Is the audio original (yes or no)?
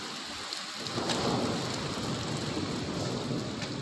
yes